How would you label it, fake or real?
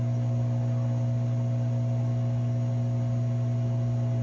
real